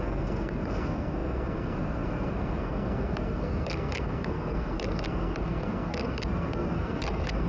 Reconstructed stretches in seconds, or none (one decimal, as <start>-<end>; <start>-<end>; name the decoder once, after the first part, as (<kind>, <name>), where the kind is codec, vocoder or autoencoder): 0.0-7.5 (codec, SNAC)

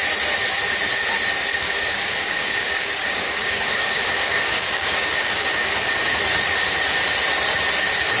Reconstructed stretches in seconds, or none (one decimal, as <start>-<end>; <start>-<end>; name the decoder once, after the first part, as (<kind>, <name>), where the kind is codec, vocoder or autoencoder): 1.5-6.1 (codec, DAC)